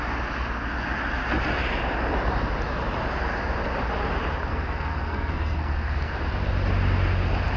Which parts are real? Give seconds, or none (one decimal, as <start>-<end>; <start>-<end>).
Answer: 0.0-4.5; 6.1-7.6